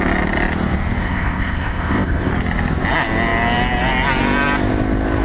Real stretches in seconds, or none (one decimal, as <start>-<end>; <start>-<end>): 0.0-1.0; 2.3-5.2